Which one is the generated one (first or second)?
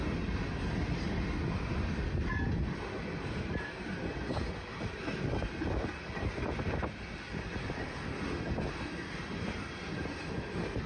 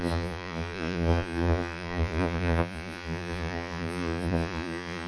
second